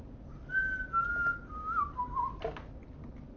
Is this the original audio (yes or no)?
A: yes